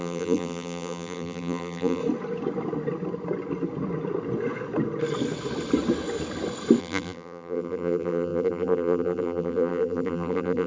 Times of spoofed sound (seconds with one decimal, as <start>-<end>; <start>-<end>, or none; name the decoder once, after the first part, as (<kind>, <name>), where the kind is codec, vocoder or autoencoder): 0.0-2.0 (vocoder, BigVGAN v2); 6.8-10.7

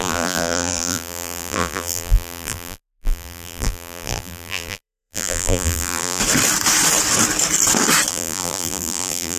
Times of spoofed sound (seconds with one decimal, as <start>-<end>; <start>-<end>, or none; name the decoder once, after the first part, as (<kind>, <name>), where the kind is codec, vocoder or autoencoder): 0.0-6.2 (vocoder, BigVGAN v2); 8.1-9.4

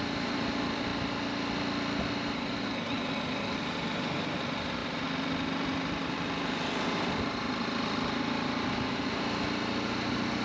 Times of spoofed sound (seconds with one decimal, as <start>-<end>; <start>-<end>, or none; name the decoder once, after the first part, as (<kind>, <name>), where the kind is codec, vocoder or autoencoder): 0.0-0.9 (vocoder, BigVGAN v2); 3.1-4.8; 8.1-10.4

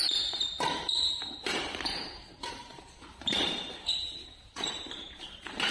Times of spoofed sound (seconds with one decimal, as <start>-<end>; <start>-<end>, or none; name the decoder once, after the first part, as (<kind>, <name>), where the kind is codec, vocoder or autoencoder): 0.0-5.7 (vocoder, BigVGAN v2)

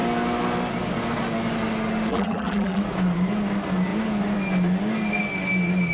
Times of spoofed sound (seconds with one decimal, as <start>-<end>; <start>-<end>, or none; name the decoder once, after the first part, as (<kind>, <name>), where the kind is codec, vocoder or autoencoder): 2.1-2.8 (vocoder, BigVGAN v2)